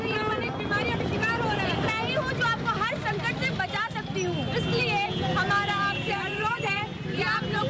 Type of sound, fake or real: real